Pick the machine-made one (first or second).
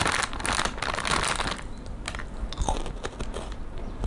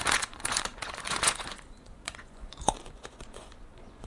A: second